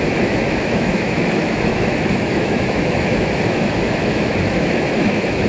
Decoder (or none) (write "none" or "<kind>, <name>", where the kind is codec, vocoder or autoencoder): autoencoder, DAC-VAE